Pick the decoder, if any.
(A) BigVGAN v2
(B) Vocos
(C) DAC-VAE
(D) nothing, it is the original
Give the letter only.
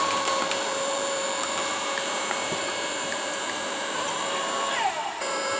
A